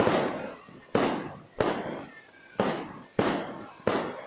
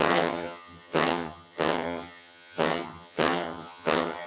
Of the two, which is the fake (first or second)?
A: second